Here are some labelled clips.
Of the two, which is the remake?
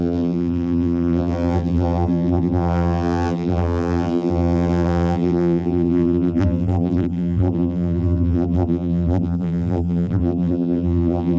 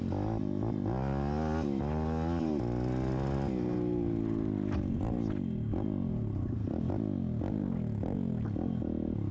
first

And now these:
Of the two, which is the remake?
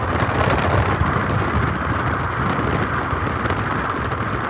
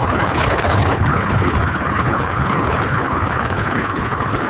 second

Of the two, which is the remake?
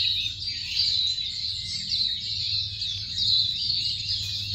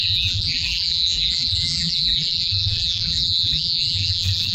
second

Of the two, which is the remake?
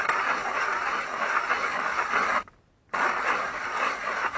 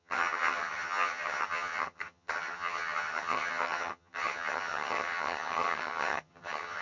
second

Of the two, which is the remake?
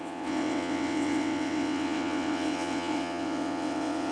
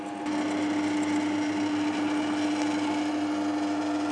first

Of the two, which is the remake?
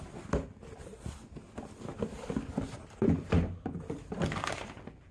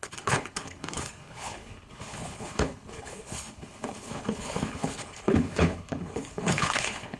second